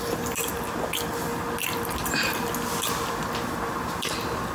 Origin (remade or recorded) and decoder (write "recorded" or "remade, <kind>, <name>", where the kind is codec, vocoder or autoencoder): recorded